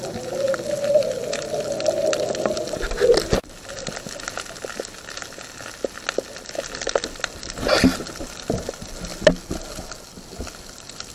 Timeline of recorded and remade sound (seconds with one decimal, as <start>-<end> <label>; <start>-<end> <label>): 0.0-11.1 recorded